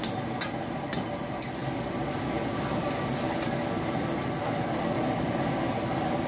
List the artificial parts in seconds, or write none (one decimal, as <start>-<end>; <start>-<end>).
none

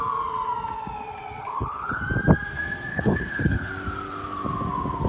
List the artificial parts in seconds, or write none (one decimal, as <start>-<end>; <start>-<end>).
1.4-2.0; 2.9-3.7

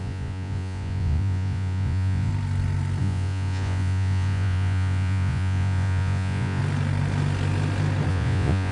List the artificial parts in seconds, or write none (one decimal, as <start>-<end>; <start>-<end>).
0.0-2.3; 3.0-6.6; 8.1-8.7

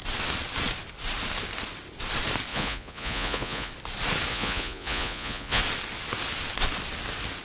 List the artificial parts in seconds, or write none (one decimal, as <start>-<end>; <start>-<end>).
2.5-3.7; 4.3-5.6

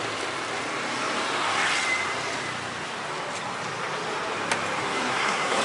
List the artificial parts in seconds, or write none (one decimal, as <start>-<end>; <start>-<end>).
4.8-5.6

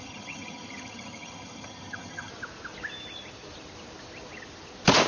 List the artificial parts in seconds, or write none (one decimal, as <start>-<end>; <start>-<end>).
0.0-2.3

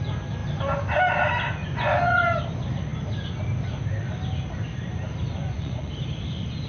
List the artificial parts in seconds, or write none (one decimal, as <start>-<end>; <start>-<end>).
1.6-2.4; 5.4-5.9

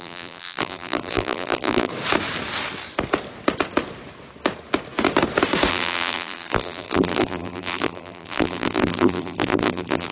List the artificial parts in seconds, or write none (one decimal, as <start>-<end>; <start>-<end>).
0.0-1.9; 5.7-10.1